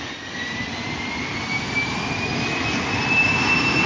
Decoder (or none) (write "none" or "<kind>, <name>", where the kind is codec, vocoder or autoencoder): none